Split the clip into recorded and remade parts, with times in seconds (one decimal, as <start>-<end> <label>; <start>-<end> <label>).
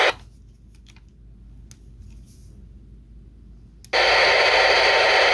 0.0-5.3 recorded